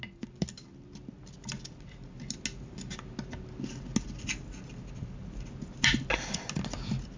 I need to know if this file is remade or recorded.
recorded